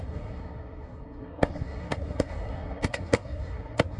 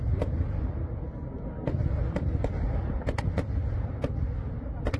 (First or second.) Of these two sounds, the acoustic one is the second